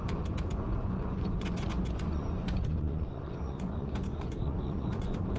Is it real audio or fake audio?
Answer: fake